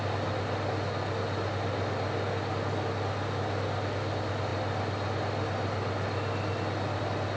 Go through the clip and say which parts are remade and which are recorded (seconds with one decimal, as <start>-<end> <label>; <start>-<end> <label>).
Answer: 0.0-7.4 recorded

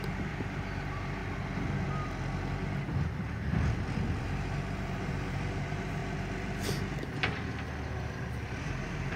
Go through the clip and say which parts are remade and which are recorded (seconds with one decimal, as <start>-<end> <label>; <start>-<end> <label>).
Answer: 0.0-1.2 remade; 1.2-4.2 recorded; 4.2-6.0 remade; 6.0-8.0 recorded; 8.0-9.2 remade

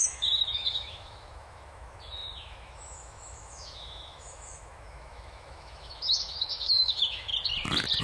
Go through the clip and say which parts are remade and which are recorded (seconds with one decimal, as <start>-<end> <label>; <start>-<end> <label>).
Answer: 0.0-7.3 remade; 7.3-8.0 recorded

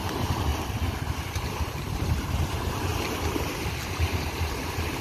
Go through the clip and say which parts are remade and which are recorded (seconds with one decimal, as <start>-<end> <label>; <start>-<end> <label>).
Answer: 0.0-0.5 remade; 0.5-1.7 recorded; 1.7-5.0 remade

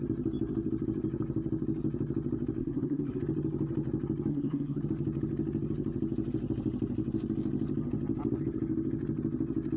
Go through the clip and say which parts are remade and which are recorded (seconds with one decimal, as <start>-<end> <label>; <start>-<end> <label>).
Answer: 0.0-2.6 recorded; 2.6-3.2 remade; 3.2-4.3 recorded; 4.3-4.8 remade; 4.8-9.8 recorded

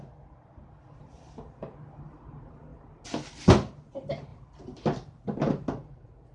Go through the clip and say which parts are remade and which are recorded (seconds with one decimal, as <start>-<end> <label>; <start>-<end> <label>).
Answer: 0.0-6.3 recorded

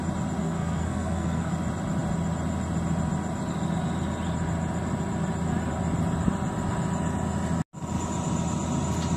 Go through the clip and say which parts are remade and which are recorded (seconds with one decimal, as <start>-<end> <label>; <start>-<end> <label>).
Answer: 0.0-0.4 recorded; 0.4-1.5 remade; 1.5-9.2 recorded

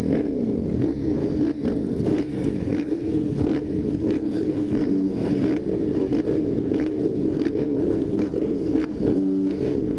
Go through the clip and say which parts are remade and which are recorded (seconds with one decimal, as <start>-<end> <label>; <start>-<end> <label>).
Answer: 0.0-1.2 remade; 1.2-1.8 recorded; 1.8-5.5 remade; 5.5-6.6 recorded; 6.6-10.0 remade